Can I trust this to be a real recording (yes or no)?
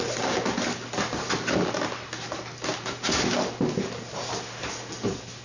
yes